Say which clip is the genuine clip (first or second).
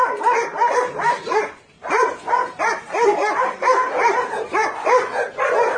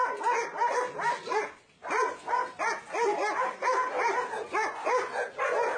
second